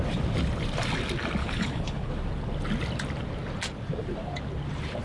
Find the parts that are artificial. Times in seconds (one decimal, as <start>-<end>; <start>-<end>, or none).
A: 1.4-2.1